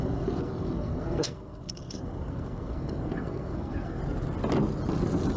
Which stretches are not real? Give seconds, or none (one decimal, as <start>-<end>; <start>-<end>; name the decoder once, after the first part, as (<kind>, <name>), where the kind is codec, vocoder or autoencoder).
0.0-4.0 (codec, SNAC)